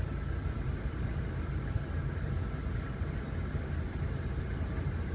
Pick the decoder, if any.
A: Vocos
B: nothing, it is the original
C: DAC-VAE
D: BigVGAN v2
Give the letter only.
B